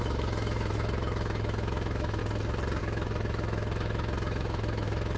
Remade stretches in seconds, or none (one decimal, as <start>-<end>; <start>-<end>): 0.0-2.2; 2.8-5.2

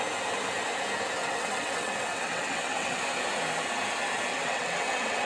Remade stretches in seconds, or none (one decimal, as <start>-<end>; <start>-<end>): 1.2-3.0; 4.3-5.3